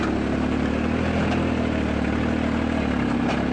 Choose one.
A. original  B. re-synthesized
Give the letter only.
A